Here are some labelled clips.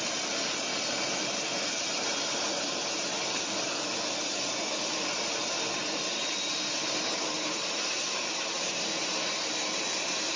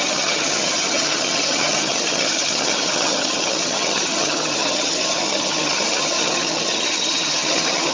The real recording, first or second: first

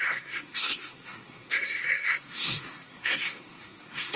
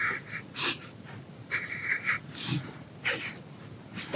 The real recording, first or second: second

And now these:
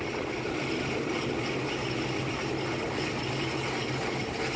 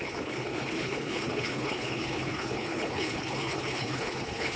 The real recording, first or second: first